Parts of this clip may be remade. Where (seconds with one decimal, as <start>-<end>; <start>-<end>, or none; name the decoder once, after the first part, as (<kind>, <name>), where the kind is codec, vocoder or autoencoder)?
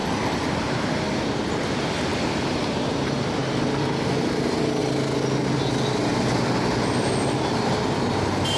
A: 2.0-3.4 (vocoder, BigVGAN v2); 4.2-4.8; 6.1-8.6